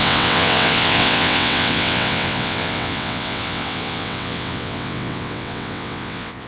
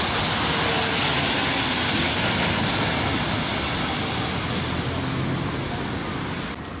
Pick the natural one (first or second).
second